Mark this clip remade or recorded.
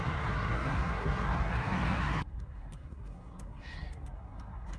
remade